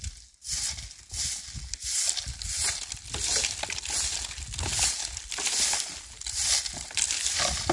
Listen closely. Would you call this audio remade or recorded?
recorded